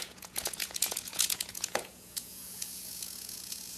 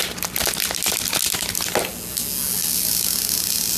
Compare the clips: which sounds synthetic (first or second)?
first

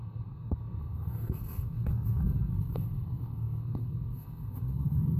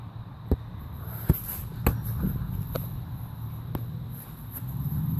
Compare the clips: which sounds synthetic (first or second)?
first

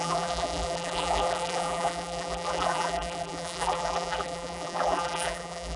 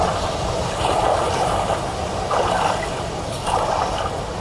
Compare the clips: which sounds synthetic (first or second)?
first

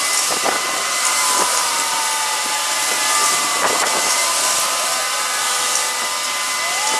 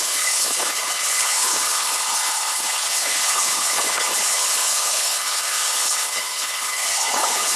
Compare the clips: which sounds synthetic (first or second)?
second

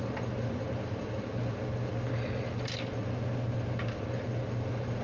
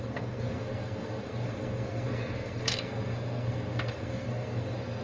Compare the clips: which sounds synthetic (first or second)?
second